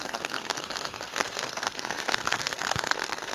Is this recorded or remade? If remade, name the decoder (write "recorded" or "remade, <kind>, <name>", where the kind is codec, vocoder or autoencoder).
remade, codec, SNAC